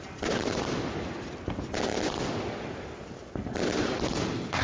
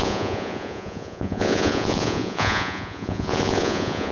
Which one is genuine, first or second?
first